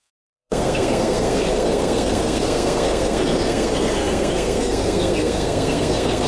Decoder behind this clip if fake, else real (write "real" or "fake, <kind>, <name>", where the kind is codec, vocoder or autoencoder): fake, codec, SNAC